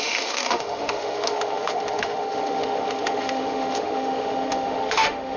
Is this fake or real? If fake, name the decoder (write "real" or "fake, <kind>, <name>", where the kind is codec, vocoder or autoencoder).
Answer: fake, autoencoder, DAC-VAE